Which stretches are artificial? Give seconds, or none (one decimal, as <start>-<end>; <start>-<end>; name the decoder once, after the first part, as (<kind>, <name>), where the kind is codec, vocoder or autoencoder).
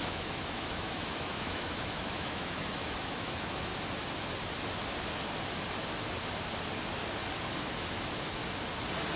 0.0-3.7 (autoencoder, DAC-VAE); 7.9-8.4